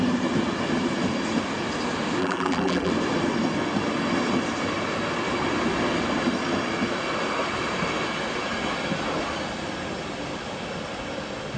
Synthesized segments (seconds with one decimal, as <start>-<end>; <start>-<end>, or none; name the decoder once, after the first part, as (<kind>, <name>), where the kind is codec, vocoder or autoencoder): 2.2-2.9 (vocoder, BigVGAN v2)